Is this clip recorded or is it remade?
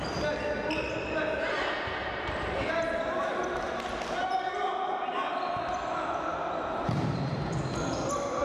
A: recorded